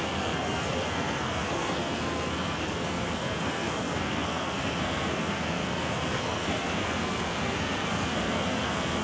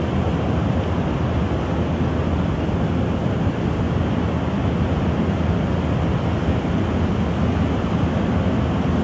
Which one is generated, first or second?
first